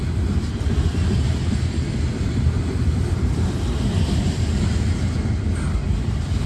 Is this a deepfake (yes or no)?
no